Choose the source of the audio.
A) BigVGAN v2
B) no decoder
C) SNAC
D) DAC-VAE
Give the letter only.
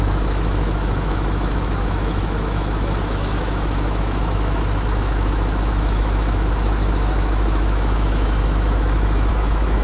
D